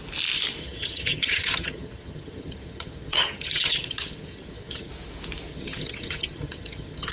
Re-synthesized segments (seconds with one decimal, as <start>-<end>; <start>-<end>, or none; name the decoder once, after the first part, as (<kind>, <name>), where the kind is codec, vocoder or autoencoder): 0.6-4.9 (vocoder, HiFi-GAN); 5.5-7.1